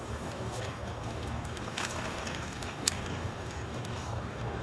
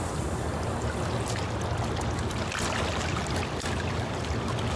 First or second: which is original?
second